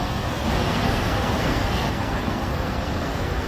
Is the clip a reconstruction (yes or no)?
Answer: yes